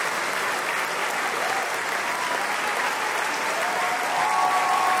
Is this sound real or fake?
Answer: real